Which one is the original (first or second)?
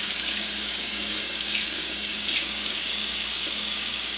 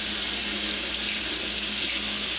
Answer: second